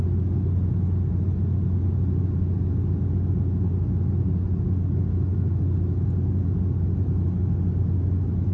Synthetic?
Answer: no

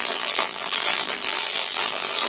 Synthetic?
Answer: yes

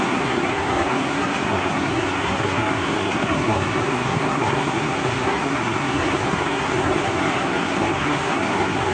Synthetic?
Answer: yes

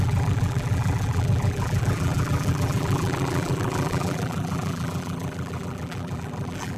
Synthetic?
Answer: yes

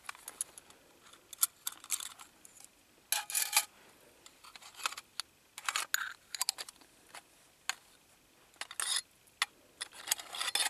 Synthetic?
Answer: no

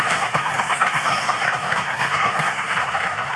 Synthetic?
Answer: yes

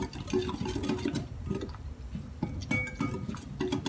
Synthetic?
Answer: no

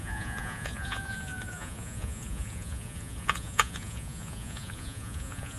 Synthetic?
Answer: yes